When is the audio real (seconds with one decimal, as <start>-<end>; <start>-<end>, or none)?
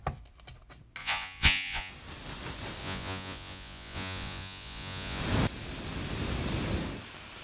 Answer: 0.0-1.0; 1.9-2.8; 5.2-7.4